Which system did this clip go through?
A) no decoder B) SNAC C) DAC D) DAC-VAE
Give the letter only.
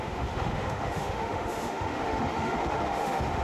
D